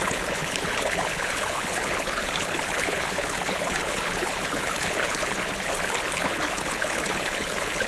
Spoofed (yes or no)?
yes